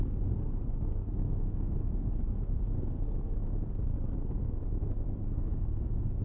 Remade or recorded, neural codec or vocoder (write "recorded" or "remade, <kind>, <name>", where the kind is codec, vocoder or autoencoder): remade, codec, SNAC